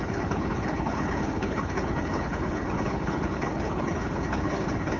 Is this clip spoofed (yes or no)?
yes